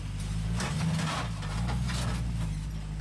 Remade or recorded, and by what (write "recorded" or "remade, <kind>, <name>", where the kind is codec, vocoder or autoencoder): recorded